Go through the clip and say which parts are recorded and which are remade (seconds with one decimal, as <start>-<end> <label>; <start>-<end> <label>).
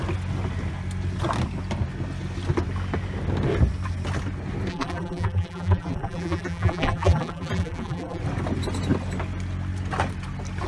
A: 0.0-4.7 recorded; 4.7-8.2 remade; 8.2-10.7 recorded